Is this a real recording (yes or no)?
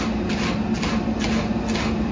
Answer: yes